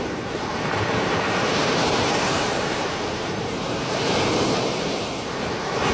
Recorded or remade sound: remade